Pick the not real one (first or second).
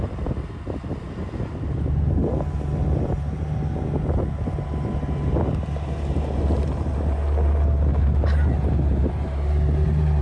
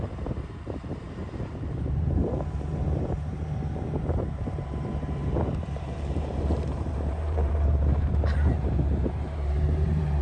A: second